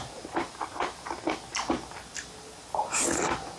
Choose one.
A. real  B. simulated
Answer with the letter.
A